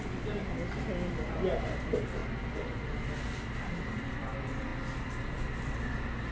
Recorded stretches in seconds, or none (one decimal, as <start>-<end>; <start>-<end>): 0.0-6.3